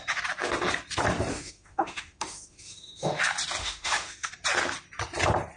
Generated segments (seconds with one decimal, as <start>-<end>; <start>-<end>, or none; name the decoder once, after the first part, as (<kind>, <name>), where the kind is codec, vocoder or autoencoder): 1.3-3.2 (autoencoder, DAC-VAE); 3.6-4.3